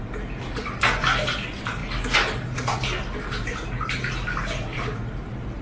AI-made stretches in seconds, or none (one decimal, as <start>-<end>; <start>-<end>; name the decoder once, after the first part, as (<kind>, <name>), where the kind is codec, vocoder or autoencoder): none